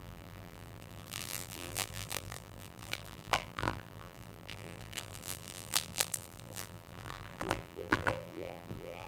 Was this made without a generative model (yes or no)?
no